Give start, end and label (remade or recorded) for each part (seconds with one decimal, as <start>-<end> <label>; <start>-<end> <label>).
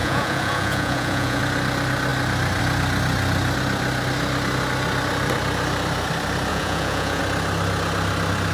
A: 0.0-1.4 remade; 1.4-6.5 recorded; 6.5-7.2 remade; 7.2-8.5 recorded